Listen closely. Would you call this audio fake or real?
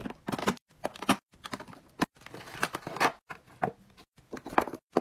real